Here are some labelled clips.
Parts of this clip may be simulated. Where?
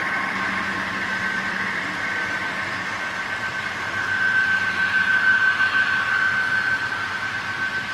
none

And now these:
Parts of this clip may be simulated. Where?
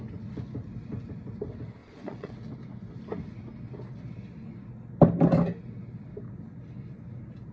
1.8-2.3 (vocoder, Vocos)